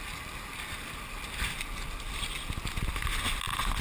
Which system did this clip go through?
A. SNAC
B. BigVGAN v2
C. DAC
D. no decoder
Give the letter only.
D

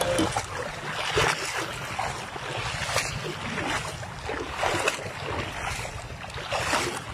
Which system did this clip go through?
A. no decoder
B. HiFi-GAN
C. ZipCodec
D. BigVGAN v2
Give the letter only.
A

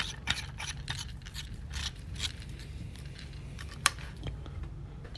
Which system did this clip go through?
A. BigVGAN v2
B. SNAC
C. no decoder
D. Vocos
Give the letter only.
A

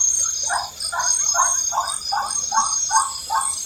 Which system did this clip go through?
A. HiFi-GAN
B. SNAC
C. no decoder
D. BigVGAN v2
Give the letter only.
C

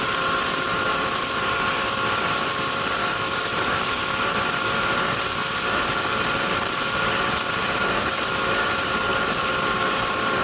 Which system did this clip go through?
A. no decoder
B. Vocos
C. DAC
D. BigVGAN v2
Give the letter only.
D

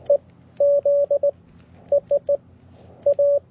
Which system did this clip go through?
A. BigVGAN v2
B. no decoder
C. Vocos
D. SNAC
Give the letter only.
B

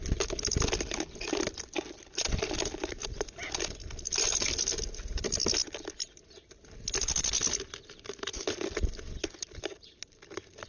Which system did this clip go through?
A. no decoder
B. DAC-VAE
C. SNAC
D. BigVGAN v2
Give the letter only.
A